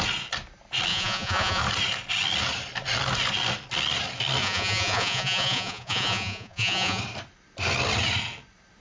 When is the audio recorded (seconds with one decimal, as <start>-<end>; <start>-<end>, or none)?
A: 0.0-0.9; 1.6-4.4; 7.0-8.8